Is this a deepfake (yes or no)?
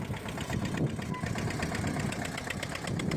no